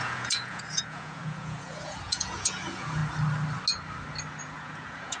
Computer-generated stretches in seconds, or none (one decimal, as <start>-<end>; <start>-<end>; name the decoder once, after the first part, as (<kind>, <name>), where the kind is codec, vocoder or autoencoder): 0.0-3.0 (vocoder, Vocos); 4.4-5.2